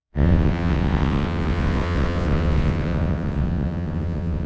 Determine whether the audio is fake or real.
fake